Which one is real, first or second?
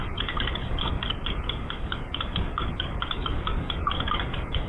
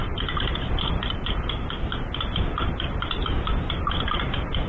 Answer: second